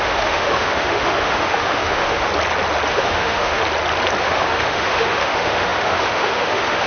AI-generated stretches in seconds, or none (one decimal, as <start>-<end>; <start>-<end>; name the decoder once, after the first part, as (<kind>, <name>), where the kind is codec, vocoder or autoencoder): 0.0-2.3 (autoencoder, DAC-VAE); 2.9-3.6; 4.2-6.9